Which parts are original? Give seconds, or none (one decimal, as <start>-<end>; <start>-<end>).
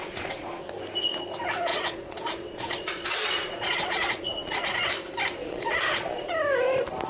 0.6-1.7; 4.9-5.4; 6.3-7.1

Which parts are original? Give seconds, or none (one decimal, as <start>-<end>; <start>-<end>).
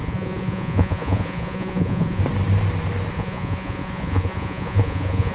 2.2-3.1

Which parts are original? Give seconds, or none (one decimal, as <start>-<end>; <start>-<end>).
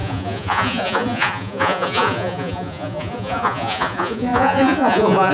none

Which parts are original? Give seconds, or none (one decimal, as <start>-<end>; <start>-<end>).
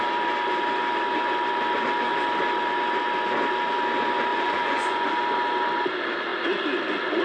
0.0-4.3; 5.1-7.2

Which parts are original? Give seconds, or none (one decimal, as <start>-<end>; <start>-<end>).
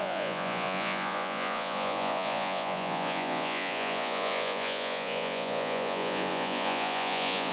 none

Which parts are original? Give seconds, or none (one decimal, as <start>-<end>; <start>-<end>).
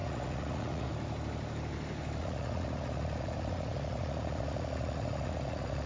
0.9-2.2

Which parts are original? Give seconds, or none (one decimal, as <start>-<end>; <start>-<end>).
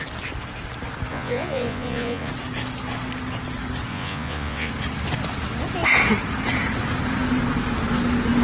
0.0-1.1; 2.3-3.9; 4.7-8.4